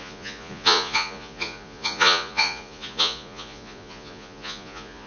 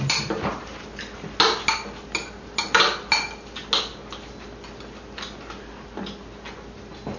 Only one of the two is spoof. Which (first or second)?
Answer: first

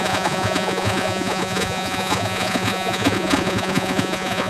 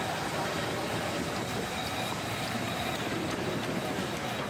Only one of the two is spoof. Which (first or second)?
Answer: first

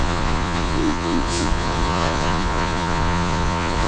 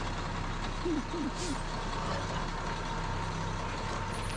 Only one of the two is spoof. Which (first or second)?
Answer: first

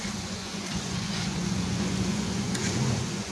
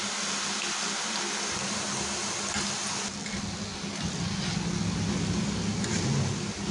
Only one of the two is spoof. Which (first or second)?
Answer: first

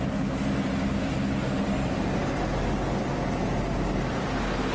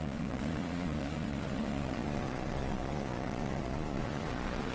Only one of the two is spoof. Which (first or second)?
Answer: second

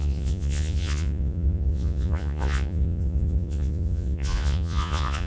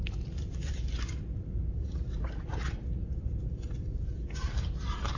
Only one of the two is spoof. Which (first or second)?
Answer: first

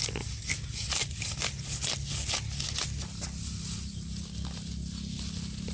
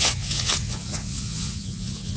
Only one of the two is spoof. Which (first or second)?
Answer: second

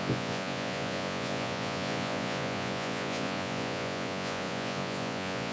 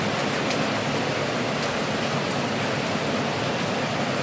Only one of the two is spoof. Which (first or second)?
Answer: first